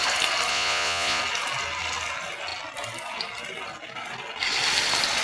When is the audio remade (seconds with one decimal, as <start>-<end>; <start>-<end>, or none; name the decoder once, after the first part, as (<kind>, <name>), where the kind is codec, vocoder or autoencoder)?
0.5-1.2 (vocoder, Vocos)

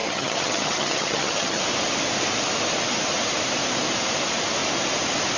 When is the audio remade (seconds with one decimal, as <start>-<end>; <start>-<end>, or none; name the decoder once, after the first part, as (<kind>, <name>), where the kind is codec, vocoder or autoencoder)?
0.0-1.6 (vocoder, HiFi-GAN)

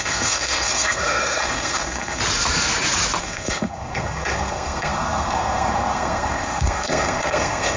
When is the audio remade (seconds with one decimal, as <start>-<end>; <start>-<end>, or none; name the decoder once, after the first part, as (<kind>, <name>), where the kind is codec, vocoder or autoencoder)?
0.0-2.2 (codec, SNAC); 3.2-7.8

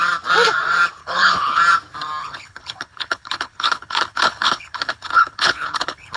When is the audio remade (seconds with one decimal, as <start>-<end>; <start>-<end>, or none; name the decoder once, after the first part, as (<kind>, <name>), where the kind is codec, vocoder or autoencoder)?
1.0-1.6 (codec, HILCodec); 2.2-6.2